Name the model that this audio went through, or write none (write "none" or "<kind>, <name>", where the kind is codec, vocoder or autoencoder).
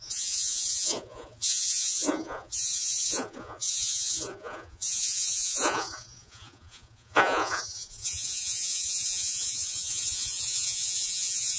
vocoder, Vocos